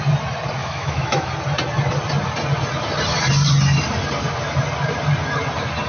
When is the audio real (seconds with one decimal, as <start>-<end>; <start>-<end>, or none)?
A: 0.0-0.6; 1.3-5.9